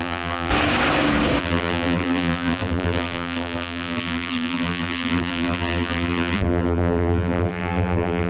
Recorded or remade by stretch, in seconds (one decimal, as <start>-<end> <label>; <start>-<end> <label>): 0.0-0.5 remade; 0.5-1.4 recorded; 1.4-8.3 remade

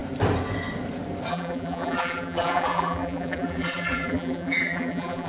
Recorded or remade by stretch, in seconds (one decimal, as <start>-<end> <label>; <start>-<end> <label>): 0.0-1.3 recorded; 1.3-5.3 remade

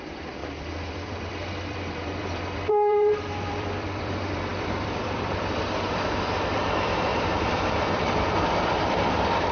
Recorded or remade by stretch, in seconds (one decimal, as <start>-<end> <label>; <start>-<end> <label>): 0.0-9.5 remade

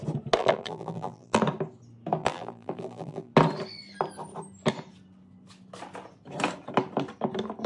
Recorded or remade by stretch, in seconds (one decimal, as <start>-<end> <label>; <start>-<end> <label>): 0.0-0.4 recorded; 0.4-1.4 remade; 1.4-2.2 recorded; 2.2-3.3 remade; 3.3-7.7 recorded

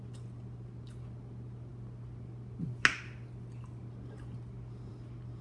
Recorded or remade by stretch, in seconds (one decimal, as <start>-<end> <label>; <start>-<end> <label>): 0.0-5.4 recorded